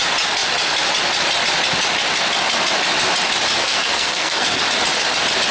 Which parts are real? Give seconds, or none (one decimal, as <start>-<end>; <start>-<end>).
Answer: 0.0-3.6; 4.6-5.5